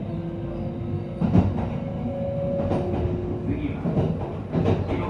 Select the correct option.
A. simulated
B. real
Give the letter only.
B